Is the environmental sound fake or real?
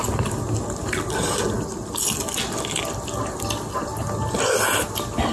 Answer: real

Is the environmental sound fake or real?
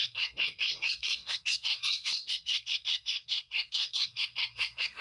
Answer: fake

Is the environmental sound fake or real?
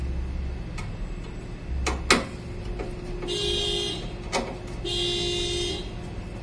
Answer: real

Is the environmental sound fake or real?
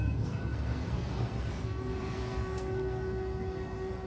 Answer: fake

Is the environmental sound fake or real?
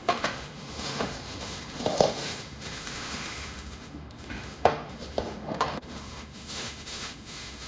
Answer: fake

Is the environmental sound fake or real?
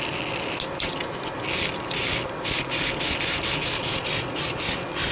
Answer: real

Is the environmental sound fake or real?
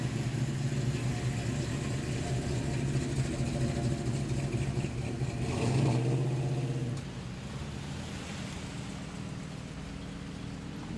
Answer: real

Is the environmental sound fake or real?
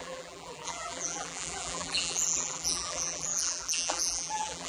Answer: fake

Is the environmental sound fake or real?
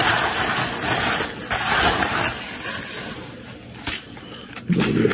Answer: real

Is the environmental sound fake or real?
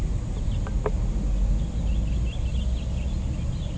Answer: real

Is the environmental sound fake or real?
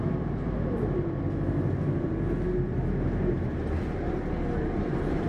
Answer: real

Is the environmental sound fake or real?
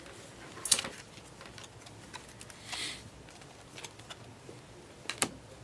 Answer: real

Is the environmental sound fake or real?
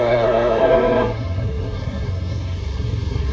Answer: fake